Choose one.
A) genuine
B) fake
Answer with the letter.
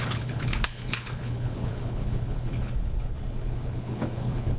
B